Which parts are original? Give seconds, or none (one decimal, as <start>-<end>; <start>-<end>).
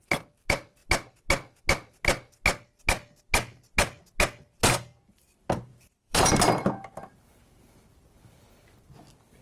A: 0.0-5.7; 6.4-9.4